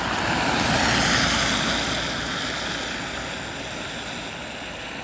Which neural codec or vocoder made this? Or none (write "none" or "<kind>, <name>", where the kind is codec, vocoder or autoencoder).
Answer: none